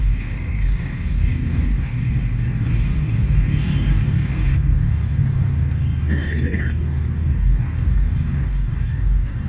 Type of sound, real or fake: fake